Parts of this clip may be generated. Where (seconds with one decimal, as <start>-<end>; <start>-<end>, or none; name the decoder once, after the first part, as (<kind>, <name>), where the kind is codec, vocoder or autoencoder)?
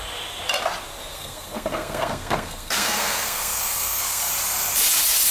1.1-4.3 (codec, SNAC)